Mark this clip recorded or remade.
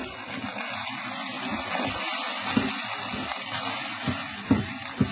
recorded